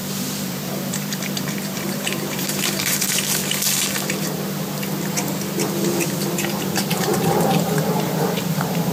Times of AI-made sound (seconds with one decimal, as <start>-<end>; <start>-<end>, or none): 0.0-3.4; 6.5-8.9